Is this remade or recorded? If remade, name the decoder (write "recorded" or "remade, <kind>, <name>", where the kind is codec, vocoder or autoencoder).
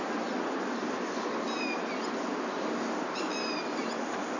recorded